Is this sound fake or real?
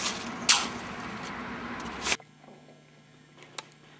real